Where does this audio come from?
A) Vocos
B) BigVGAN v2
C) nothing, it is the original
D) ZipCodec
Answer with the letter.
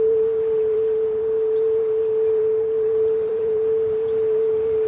B